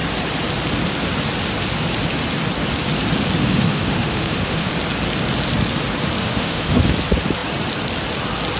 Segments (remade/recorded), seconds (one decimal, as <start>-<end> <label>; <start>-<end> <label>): 0.0-3.4 recorded; 3.4-4.7 remade; 4.7-6.2 recorded; 6.2-6.9 remade; 6.9-8.6 recorded